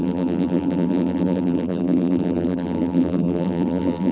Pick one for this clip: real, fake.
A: fake